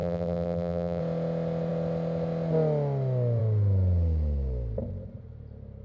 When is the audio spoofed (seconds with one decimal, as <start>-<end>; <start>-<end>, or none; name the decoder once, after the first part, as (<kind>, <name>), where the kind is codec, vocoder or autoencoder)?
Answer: 0.0-1.0 (vocoder, BigVGAN v2)

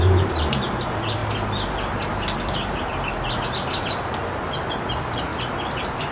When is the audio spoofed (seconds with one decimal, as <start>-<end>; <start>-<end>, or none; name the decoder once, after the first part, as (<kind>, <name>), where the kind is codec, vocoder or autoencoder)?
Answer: 0.0-1.2 (vocoder, BigVGAN v2); 4.7-5.3

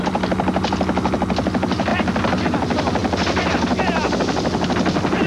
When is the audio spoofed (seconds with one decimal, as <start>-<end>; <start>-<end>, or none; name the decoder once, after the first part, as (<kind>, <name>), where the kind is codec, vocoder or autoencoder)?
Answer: none